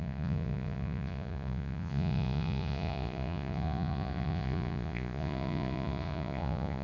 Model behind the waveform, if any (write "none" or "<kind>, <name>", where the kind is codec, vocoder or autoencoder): vocoder, Vocos